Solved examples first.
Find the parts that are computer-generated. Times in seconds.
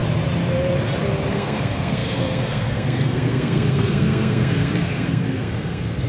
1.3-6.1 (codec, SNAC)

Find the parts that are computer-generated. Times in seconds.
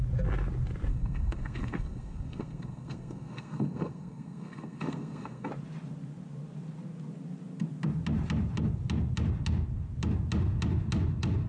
0.9-5.5 (codec, SNAC)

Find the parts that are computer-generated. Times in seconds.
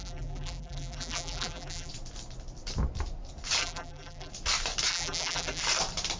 0.0-1.9 (vocoder, BigVGAN v2); 3.6-4.3; 4.9-5.6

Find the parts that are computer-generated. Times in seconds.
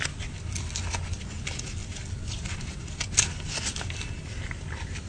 none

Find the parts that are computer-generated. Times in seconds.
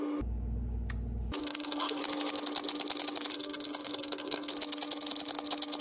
1.4-2.0 (codec, SNAC); 3.3-4.5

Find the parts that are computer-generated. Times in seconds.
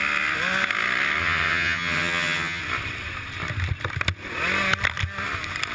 1.2-2.6 (vocoder, HiFi-GAN)